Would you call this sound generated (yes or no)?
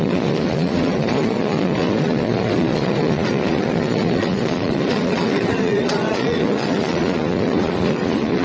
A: yes